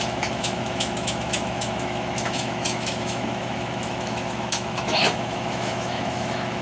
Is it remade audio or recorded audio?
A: remade